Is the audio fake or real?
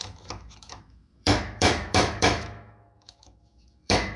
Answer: fake